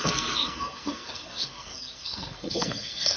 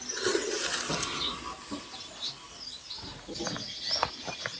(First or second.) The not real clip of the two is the first